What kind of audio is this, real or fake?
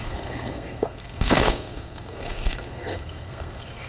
fake